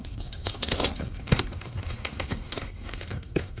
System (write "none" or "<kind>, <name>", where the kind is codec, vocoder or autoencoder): codec, SNAC